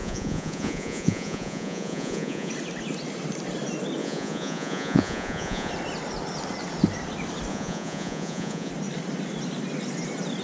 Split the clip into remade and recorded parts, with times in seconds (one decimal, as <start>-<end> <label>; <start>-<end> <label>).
0.0-2.5 remade; 2.5-4.0 recorded; 4.0-5.7 remade; 5.7-7.5 recorded; 7.5-8.7 remade; 8.7-10.4 recorded